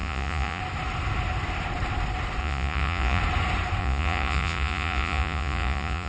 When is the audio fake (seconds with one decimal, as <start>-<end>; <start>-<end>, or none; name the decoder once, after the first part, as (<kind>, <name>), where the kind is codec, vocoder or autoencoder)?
0.0-0.6 (vocoder, Vocos); 2.4-3.2; 3.8-6.1